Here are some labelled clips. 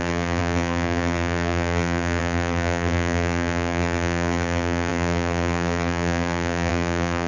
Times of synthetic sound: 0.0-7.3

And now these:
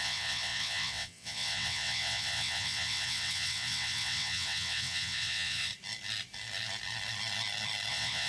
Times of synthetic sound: 0.0-5.7; 7.9-8.3

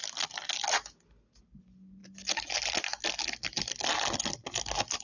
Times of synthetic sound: none

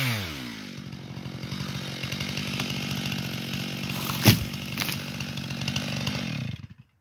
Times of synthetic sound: none

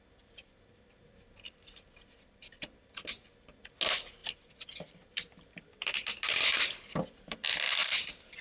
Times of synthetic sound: 4.2-5.9; 7.8-8.4

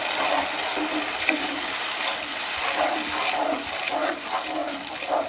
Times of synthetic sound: 0.7-3.9; 4.6-5.3

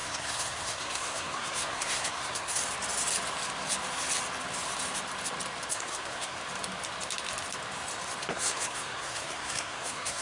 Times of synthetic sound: 0.0-2.6; 5.7-6.4; 8.3-10.2

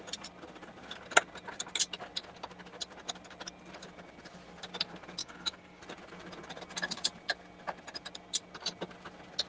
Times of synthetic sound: 5.2-5.8